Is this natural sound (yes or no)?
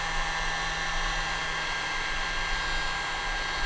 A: yes